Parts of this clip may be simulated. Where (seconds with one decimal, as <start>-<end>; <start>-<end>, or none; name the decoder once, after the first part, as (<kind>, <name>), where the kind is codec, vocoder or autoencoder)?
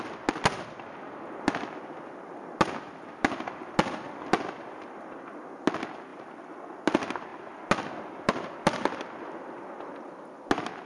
none